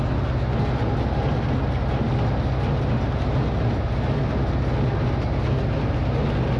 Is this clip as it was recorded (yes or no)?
yes